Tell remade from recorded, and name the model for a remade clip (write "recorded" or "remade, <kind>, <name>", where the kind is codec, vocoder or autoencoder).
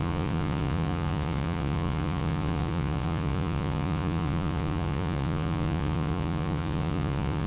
remade, vocoder, Vocos